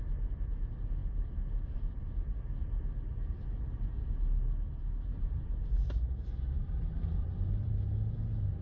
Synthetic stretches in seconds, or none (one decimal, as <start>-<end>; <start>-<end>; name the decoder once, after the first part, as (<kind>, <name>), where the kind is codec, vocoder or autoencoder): 1.0-2.4 (vocoder, BigVGAN v2); 5.1-7.7